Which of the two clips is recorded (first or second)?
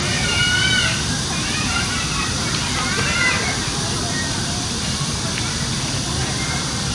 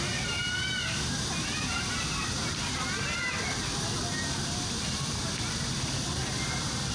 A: second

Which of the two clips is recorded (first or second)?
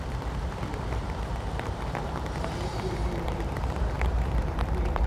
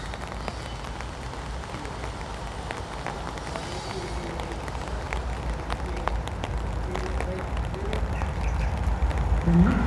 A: second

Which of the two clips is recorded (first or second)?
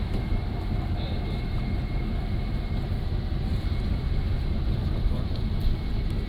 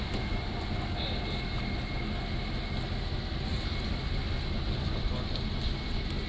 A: second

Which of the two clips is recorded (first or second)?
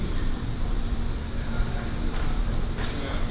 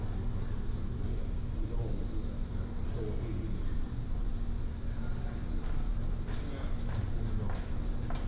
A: second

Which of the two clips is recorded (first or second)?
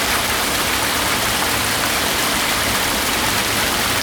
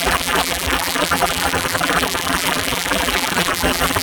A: first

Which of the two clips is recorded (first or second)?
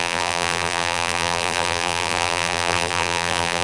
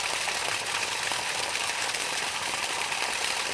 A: second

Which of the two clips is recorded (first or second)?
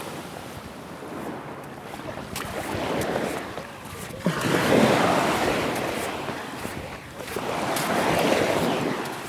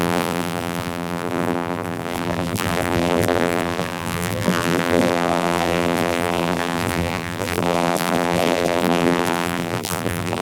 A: first